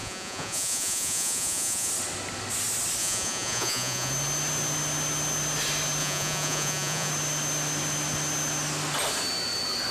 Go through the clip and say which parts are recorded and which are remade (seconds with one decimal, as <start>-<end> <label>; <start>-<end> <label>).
0.0-1.9 remade; 1.9-3.0 recorded; 3.0-4.1 remade; 4.1-6.0 recorded; 6.0-7.1 remade; 7.1-9.9 recorded